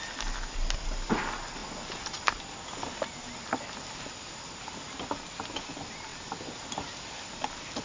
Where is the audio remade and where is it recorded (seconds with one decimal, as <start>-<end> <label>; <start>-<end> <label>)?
0.0-7.8 recorded